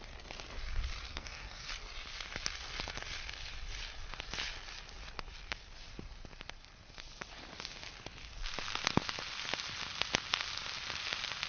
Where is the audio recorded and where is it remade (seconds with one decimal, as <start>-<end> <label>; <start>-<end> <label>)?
0.0-1.1 recorded; 1.1-1.7 remade; 1.7-11.5 recorded